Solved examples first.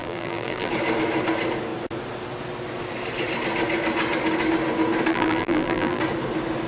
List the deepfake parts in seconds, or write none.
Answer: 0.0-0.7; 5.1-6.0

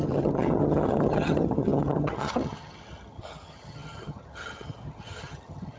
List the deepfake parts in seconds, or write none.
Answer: 0.0-5.8

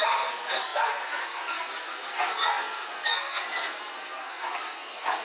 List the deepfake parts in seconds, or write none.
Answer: 0.0-5.2

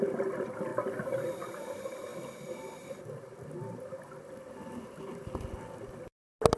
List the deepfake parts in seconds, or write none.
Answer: none

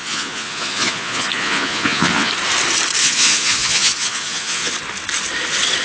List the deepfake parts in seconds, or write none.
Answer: 0.0-2.3; 3.0-4.7